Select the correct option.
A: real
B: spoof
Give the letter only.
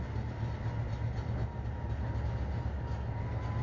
A